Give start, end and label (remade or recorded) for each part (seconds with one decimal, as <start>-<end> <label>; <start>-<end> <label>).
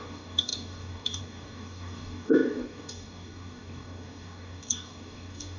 0.0-5.6 remade